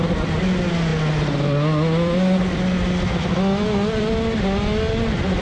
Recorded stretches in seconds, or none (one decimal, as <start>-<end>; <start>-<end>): 0.0-5.4